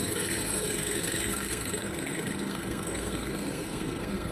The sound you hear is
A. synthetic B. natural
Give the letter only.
A